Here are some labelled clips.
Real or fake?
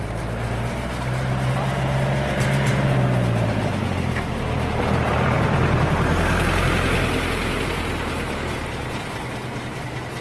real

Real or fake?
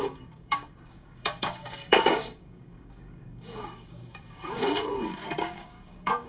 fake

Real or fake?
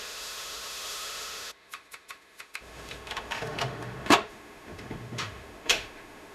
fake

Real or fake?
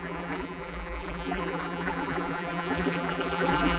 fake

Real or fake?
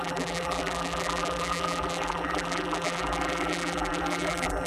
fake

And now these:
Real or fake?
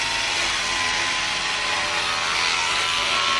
real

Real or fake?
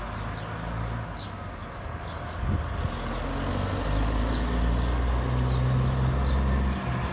real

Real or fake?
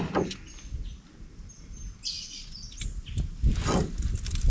real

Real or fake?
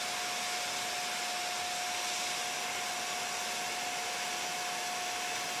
real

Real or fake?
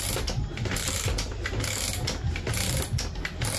real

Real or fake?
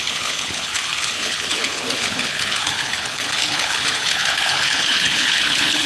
fake